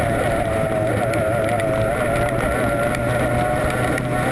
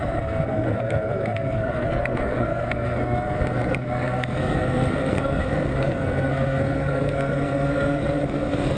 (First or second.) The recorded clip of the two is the first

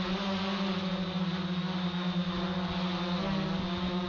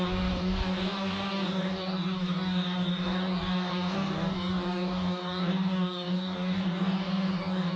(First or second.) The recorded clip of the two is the first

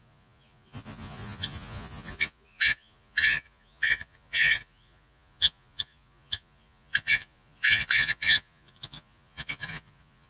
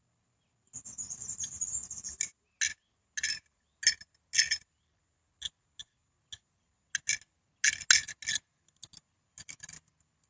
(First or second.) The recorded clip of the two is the second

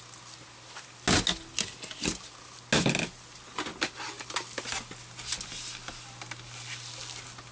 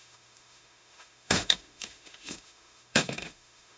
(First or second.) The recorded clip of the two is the first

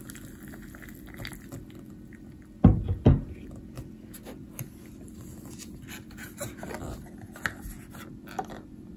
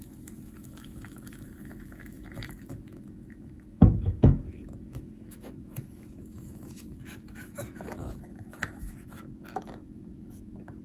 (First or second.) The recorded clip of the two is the first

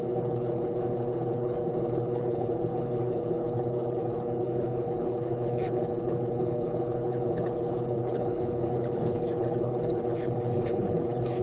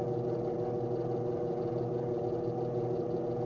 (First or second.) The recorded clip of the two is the second